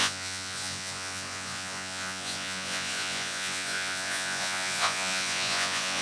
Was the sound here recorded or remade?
remade